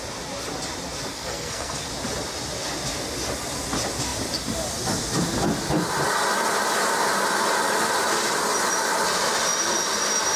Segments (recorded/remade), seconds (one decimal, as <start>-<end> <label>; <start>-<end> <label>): 0.0-1.1 recorded; 1.1-1.9 remade; 1.9-10.4 recorded